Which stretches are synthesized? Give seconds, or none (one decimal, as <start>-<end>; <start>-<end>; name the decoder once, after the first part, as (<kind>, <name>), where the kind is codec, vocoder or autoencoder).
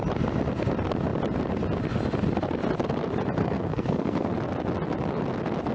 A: 3.4-4.3 (codec, SNAC)